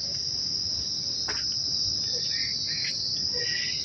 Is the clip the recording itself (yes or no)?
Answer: yes